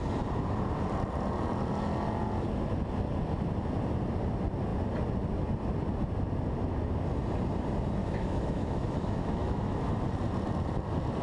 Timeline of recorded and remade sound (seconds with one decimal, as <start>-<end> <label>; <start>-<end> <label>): 0.0-8.0 recorded; 8.0-9.9 remade; 9.9-11.2 recorded